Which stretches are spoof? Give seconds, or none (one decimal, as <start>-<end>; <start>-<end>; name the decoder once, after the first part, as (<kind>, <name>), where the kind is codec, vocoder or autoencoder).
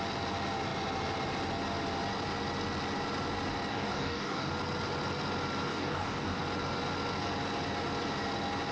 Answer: 3.7-4.5 (codec, DAC); 5.7-6.4